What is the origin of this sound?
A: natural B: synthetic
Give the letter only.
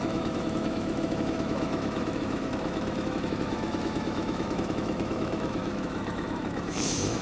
B